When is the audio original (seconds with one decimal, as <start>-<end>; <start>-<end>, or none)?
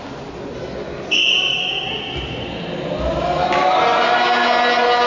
0.0-5.1